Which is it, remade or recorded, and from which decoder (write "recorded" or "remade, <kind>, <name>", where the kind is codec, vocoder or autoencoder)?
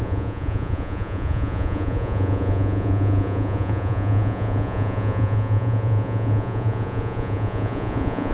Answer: remade, vocoder, Vocos